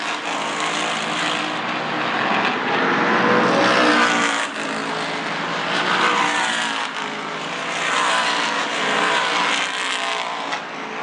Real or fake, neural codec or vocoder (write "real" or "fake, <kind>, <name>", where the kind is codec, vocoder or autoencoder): real